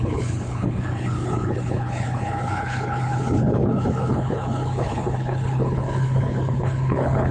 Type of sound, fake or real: fake